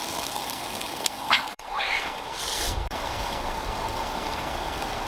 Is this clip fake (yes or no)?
yes